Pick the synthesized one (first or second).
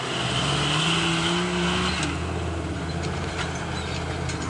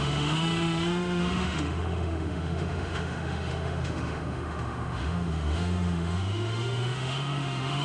second